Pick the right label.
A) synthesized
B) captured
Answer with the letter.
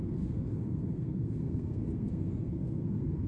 A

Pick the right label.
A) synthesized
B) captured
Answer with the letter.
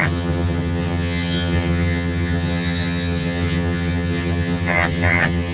A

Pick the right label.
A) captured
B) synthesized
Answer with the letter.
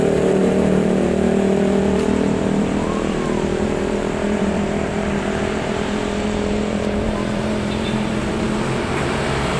B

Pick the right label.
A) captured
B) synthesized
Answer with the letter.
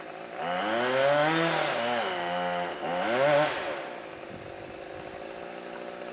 A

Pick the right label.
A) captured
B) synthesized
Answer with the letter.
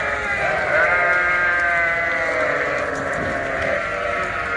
A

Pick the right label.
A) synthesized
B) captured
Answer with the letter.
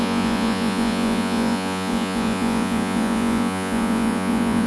A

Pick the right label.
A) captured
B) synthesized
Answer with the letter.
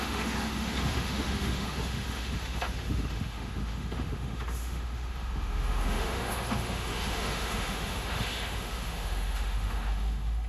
B